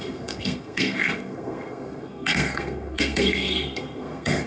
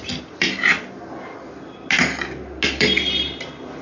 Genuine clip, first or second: second